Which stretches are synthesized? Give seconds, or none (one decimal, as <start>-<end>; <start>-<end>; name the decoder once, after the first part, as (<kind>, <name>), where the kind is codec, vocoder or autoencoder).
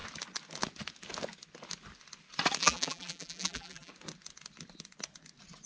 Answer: 2.6-3.9 (vocoder, BigVGAN v2)